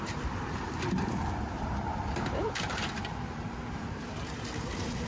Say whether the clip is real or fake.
fake